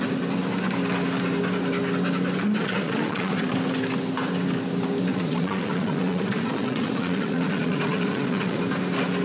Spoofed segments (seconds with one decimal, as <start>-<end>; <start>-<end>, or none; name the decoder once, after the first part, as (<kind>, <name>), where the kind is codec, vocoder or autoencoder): 2.6-3.5 (vocoder, Vocos); 5.1-8.6